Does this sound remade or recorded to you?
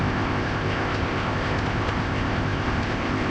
remade